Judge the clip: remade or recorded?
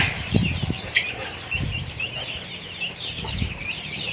remade